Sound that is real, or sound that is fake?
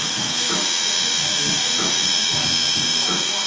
fake